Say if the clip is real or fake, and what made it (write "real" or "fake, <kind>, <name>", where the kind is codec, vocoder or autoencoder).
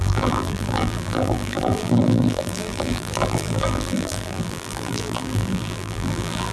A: fake, vocoder, BigVGAN v2